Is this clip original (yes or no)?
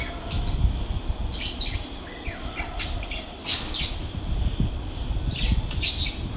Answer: yes